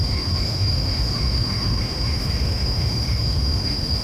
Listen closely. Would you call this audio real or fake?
fake